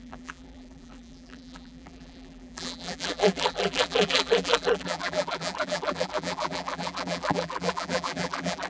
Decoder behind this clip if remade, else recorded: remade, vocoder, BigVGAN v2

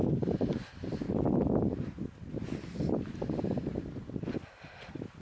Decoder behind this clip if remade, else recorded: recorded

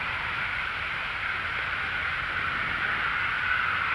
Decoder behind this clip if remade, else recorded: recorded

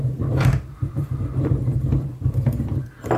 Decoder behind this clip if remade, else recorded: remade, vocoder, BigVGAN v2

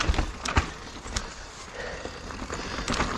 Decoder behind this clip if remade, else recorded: recorded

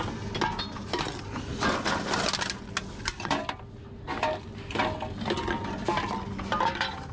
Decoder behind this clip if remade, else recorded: recorded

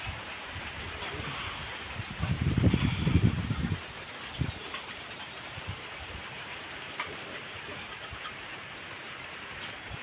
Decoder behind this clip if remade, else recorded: remade, vocoder, BigVGAN v2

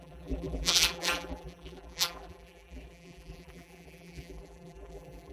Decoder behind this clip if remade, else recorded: remade, vocoder, BigVGAN v2